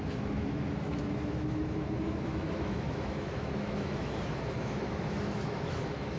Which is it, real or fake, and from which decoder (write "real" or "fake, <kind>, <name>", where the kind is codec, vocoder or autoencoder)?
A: fake, autoencoder, DAC-VAE